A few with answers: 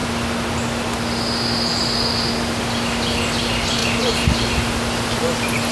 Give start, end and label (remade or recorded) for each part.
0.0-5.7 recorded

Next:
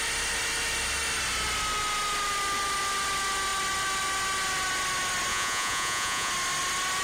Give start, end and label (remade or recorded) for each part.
0.0-5.3 recorded; 5.3-6.3 remade; 6.3-7.0 recorded

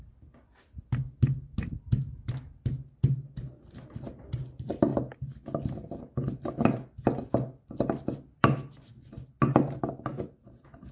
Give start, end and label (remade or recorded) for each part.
0.0-10.9 recorded

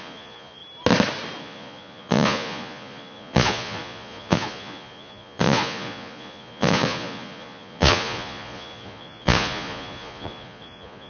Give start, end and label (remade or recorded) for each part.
0.0-0.6 remade; 0.6-1.4 recorded; 1.4-11.1 remade

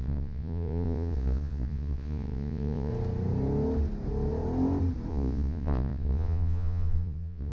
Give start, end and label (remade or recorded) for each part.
0.0-2.9 remade; 2.9-5.1 recorded; 5.1-7.5 remade

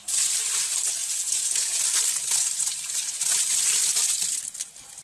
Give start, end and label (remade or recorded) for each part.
0.0-1.0 recorded; 1.0-1.8 remade; 1.8-5.0 recorded

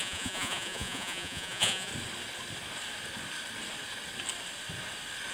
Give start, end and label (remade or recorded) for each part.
0.0-1.9 remade; 1.9-5.3 recorded

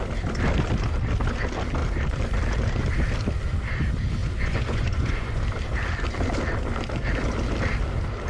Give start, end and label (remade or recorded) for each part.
0.0-4.2 recorded; 4.2-5.4 remade; 5.4-8.3 recorded